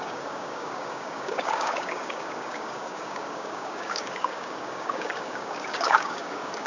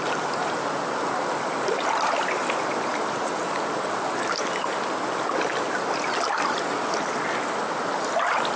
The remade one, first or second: first